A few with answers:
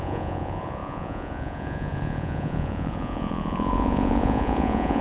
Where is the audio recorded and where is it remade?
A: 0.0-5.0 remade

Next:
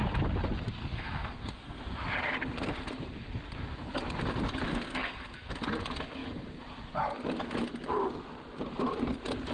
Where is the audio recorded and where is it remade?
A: 0.0-0.8 recorded; 0.8-1.8 remade; 1.8-4.7 recorded; 4.7-5.5 remade; 5.5-9.5 recorded

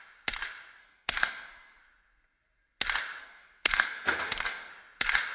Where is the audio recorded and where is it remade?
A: 0.0-0.8 recorded; 0.8-1.8 remade; 1.8-3.2 recorded; 3.2-4.7 remade; 4.7-5.3 recorded